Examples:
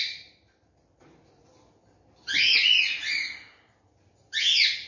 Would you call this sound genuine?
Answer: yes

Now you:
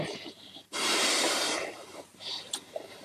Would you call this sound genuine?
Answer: no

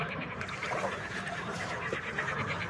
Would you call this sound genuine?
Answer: no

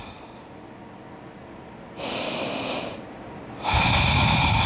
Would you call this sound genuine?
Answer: yes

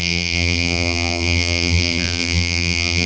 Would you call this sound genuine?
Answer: no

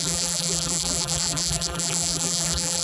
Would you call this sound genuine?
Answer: no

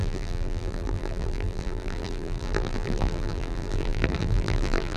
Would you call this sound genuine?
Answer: no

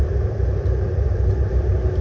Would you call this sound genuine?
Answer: no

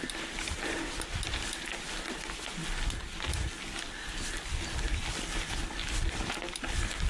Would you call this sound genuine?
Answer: yes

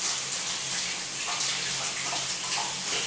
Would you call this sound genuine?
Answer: yes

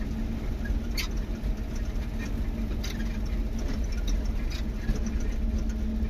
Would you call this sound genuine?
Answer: yes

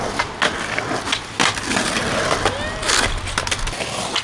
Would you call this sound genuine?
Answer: yes